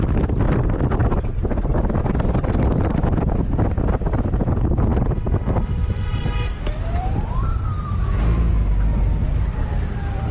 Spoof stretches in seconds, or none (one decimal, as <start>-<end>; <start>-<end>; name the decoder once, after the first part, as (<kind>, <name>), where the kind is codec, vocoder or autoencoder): 0.0-1.0 (vocoder, BigVGAN v2); 2.0-10.3

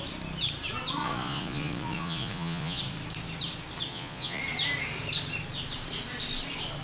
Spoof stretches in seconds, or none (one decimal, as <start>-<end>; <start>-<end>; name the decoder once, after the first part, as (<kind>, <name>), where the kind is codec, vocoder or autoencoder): 1.0-2.8 (vocoder, Vocos); 3.9-4.4

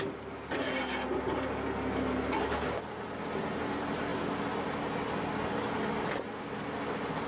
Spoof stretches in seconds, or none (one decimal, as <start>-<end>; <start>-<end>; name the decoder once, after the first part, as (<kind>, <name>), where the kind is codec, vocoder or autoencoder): none